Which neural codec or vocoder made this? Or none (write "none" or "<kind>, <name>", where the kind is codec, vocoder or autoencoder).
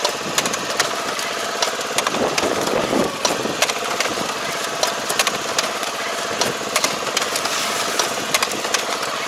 none